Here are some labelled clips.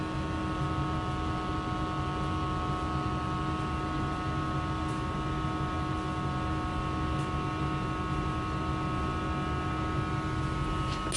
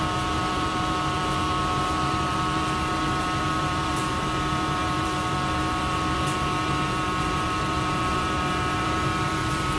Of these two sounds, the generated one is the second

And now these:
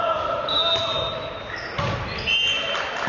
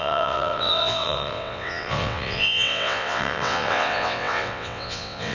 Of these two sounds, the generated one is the second